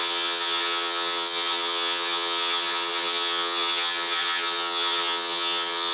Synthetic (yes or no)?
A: yes